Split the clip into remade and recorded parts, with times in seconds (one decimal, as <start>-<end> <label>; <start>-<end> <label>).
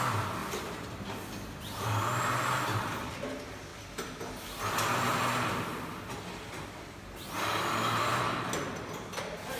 0.0-0.4 recorded; 0.4-3.1 remade; 3.1-9.6 recorded